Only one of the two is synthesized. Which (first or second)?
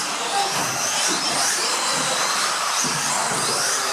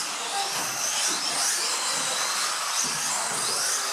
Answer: first